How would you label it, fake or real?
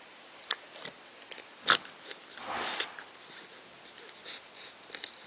real